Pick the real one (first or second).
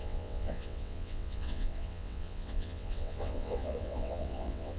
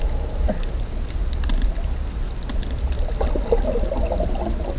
second